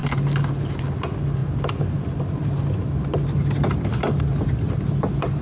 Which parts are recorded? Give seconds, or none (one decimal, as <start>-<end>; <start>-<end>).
0.0-5.4

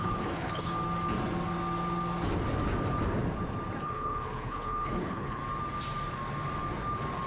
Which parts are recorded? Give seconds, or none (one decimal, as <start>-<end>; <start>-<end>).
0.7-3.8; 5.4-7.3

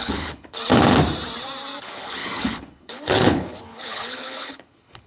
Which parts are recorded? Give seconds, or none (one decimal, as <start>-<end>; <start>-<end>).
0.6-1.8

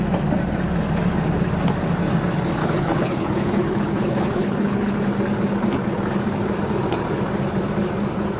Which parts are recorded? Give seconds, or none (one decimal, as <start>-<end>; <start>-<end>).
0.0-2.6; 5.0-8.4

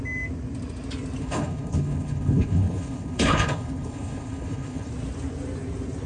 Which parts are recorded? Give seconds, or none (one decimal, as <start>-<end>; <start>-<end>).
0.0-1.2; 4.9-6.1

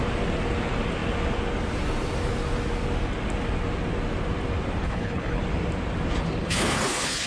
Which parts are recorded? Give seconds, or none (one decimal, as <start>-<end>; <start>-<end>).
0.0-4.8; 5.4-6.4

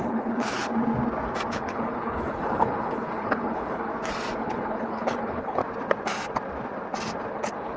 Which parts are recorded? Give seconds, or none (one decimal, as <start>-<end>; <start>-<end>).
0.7-1.5; 3.9-4.4; 5.6-7.3

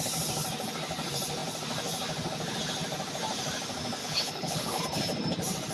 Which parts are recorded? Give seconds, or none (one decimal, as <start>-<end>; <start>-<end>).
0.0-4.0; 4.8-5.7